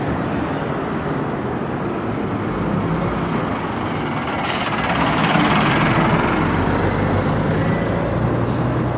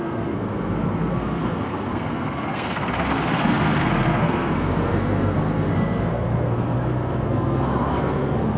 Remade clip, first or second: second